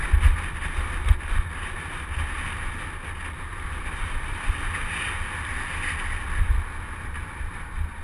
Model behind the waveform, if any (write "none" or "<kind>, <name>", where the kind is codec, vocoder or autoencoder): none